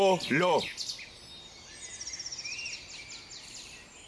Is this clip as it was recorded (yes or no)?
yes